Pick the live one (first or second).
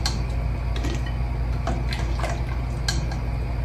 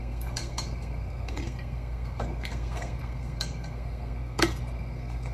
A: first